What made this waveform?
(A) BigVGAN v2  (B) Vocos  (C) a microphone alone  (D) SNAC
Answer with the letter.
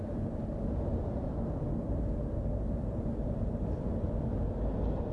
C